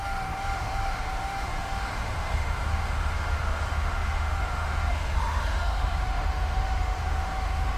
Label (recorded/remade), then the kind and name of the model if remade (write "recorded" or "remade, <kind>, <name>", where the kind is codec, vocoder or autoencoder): remade, autoencoder, DAC-VAE